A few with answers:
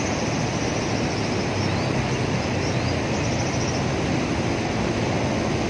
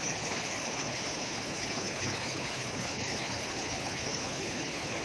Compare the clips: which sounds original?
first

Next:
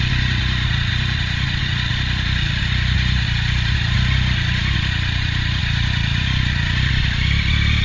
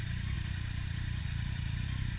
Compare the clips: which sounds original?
first